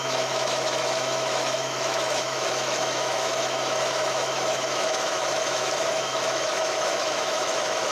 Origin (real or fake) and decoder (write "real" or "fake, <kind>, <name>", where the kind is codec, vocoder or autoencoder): fake, autoencoder, DAC-VAE